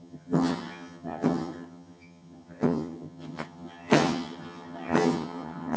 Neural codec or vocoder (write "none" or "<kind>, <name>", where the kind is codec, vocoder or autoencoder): vocoder, HiFi-GAN